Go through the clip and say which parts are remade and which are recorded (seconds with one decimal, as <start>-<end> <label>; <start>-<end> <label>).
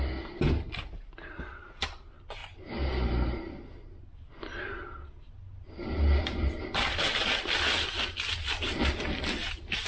0.0-2.4 remade; 2.4-4.6 recorded; 4.6-9.9 remade